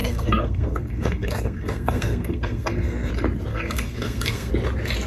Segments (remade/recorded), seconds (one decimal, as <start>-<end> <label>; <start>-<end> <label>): 0.0-3.1 remade; 3.1-3.5 recorded; 3.5-4.5 remade; 4.5-5.1 recorded